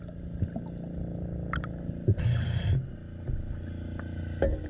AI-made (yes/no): no